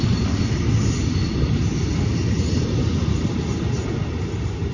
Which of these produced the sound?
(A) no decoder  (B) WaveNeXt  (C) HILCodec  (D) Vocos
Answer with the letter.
A